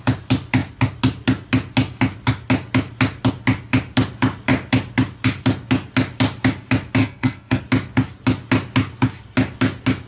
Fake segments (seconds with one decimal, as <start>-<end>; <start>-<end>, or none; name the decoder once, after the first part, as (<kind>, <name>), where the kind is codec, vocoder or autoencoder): 7.0-7.6 (codec, SNAC)